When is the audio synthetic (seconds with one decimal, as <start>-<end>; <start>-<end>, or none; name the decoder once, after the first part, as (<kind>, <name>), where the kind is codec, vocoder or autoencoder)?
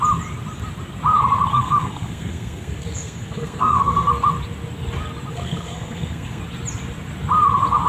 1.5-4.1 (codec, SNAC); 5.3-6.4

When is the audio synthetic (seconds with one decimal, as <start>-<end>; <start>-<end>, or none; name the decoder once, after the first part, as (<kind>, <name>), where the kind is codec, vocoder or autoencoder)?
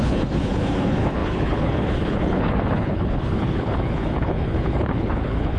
0.0-5.6 (codec, HILCodec)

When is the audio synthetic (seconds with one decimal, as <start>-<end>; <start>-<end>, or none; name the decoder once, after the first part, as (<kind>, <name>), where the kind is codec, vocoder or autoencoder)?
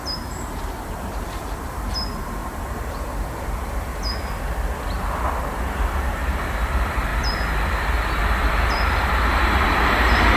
0.0-3.9 (vocoder, BigVGAN v2); 6.1-7.1; 8.2-10.4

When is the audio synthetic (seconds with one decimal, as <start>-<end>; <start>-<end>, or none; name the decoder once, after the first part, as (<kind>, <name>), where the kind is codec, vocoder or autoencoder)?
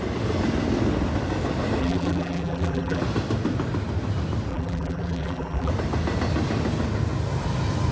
1.8-3.0 (vocoder, BigVGAN v2); 4.5-5.7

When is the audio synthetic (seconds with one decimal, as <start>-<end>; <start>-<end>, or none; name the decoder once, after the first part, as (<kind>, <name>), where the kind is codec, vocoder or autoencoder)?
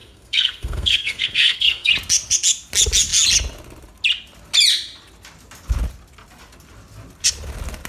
0.0-1.9 (codec, SNAC)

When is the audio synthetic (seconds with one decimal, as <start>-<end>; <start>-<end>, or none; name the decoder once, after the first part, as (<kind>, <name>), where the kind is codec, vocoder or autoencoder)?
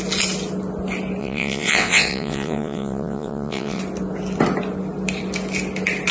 1.2-3.8 (vocoder, WaveNeXt)